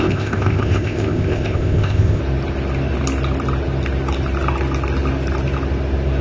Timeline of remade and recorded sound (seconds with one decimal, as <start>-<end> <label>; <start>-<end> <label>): 0.0-2.2 remade; 2.2-6.2 recorded